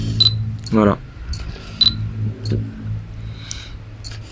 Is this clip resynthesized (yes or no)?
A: no